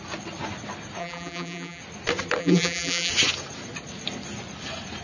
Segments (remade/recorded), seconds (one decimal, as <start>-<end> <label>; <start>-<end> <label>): 0.0-1.0 recorded; 1.0-1.8 remade; 1.8-2.4 recorded; 2.4-3.1 remade; 3.1-5.0 recorded